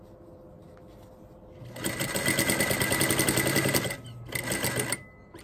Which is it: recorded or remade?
recorded